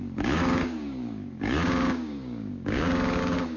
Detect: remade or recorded remade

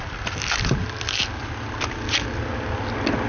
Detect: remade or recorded recorded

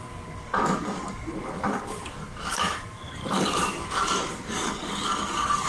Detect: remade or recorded remade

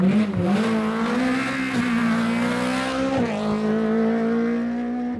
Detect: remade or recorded recorded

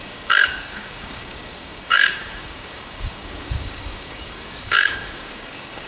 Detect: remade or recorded remade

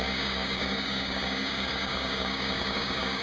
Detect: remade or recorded remade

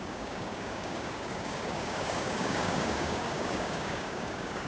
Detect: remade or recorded remade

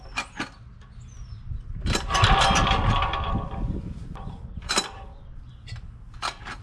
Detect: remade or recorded recorded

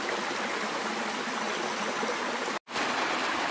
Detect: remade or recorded recorded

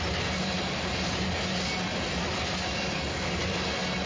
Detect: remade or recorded recorded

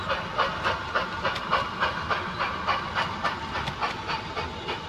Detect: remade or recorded recorded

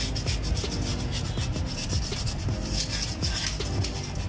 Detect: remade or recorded recorded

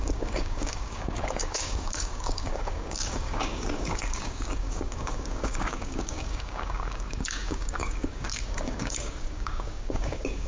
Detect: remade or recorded remade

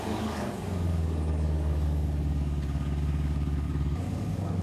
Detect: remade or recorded remade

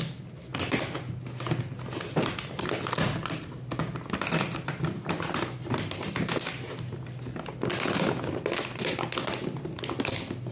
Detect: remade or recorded recorded